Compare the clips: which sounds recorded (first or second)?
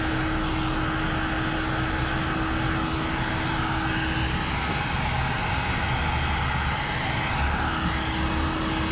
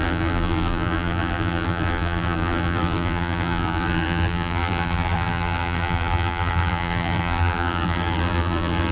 first